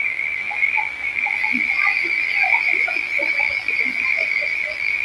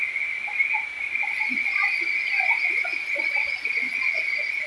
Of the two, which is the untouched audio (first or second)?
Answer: second